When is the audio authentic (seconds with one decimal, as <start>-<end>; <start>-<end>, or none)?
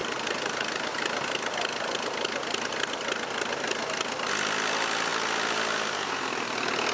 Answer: 0.0-6.9